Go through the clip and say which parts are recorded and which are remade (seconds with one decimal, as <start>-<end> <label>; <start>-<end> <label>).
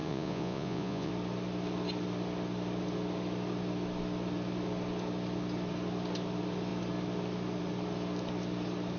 0.0-1.1 remade; 1.1-9.0 recorded